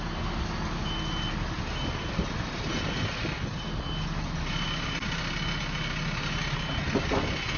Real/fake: real